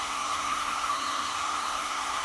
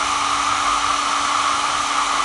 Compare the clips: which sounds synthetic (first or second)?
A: first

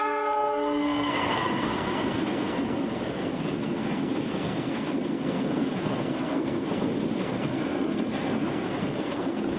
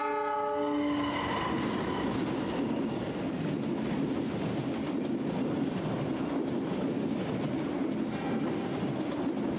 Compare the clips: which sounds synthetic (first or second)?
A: first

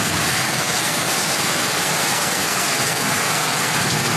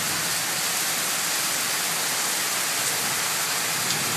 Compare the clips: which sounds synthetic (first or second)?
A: first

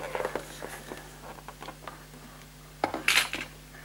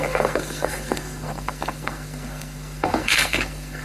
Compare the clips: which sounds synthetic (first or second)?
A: second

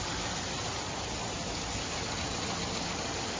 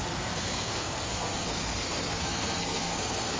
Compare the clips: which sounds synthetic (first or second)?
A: second